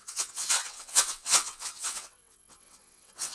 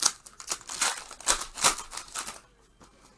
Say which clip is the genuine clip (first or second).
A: second